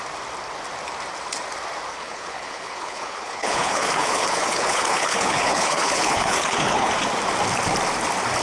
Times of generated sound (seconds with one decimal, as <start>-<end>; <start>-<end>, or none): 1.9-6.9

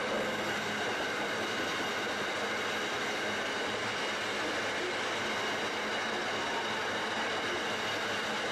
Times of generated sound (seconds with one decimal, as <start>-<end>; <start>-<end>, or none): none

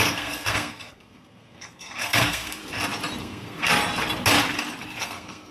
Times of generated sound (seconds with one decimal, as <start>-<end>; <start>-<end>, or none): 0.0-2.6; 3.2-3.7; 5.0-5.5